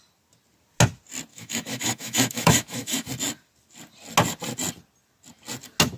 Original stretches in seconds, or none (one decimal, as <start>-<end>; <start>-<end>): 0.0-1.3; 3.1-6.0